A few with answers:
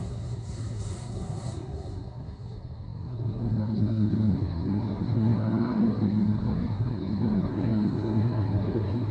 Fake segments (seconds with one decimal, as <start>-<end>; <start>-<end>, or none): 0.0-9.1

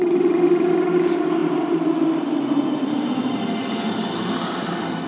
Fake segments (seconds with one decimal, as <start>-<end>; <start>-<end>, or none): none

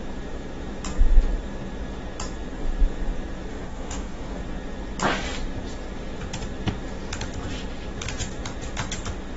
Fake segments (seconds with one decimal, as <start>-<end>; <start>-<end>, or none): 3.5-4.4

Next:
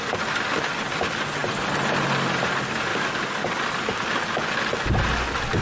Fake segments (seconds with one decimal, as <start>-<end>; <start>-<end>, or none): 2.9-3.6

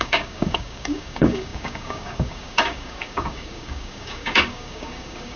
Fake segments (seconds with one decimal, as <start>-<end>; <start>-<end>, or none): 0.0-5.4